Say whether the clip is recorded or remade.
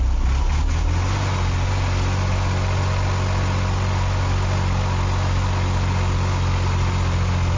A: recorded